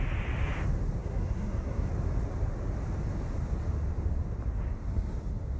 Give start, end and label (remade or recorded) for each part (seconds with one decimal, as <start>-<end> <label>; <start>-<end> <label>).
0.0-1.0 recorded; 1.0-1.9 remade; 1.9-5.6 recorded